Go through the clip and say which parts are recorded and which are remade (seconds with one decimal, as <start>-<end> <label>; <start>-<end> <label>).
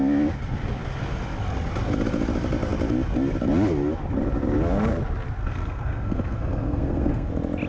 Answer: 0.0-5.4 recorded; 5.4-7.3 remade; 7.3-7.7 recorded